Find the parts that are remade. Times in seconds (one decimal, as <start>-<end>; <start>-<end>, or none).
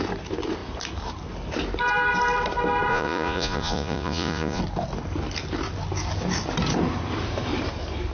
2.9-4.6